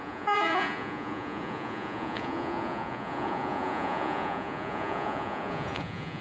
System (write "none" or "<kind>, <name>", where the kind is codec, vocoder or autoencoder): vocoder, Vocos